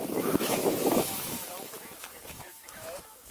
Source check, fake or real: fake